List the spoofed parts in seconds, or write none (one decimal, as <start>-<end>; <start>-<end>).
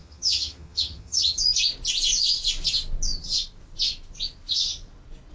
0.0-1.4